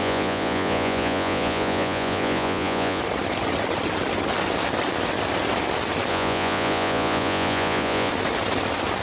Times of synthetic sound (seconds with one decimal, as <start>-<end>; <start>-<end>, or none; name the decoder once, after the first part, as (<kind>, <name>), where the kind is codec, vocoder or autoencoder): 0.0-3.0 (vocoder, Vocos); 6.1-8.1